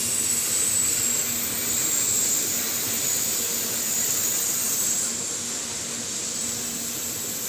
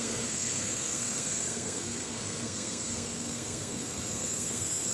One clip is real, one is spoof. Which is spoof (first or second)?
second